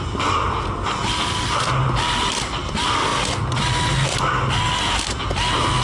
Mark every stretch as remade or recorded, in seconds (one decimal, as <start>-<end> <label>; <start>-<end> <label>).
0.0-5.8 recorded